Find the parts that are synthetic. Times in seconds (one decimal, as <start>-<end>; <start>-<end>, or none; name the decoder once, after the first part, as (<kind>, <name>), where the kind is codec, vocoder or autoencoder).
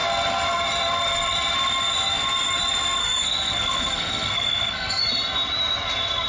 3.0-5.0 (codec, SNAC)